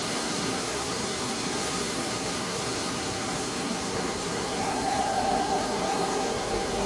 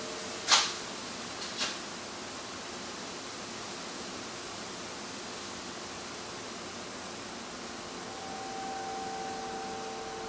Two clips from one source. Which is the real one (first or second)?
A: second